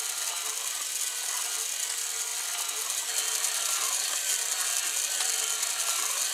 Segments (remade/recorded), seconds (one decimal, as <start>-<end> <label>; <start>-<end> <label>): 0.0-6.3 recorded